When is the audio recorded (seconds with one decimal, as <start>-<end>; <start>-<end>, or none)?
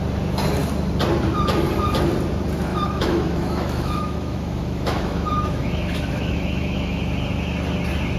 0.0-2.7; 7.0-8.2